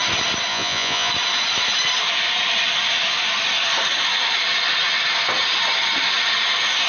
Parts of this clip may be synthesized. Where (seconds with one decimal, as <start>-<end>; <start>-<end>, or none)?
0.5-1.1